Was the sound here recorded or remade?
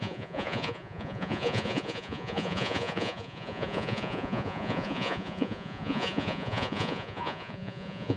remade